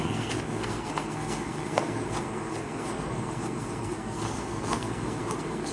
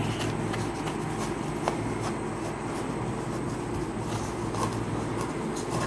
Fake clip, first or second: first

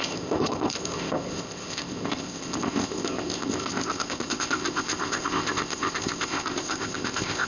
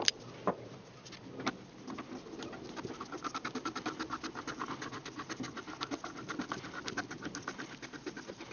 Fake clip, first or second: first